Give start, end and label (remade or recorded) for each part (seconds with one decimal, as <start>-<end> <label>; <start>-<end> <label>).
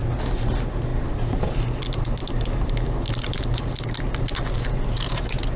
0.0-5.6 recorded